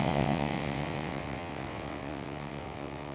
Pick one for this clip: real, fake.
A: fake